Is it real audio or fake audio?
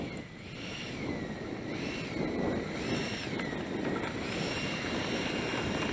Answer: real